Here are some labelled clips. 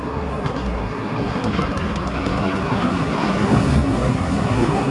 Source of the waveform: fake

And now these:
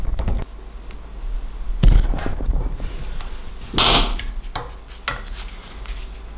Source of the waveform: real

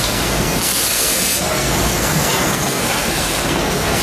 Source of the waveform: fake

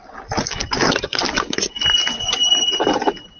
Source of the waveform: real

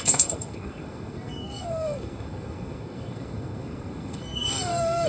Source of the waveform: fake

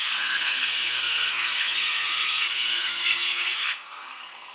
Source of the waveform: fake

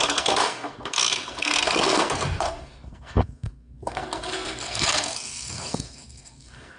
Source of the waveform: fake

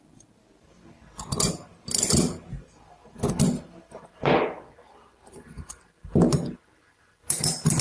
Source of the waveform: real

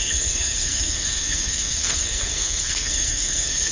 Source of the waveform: fake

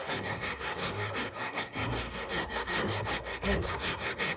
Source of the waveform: fake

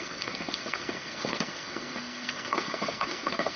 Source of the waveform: fake